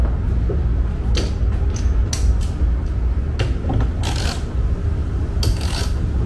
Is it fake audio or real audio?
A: real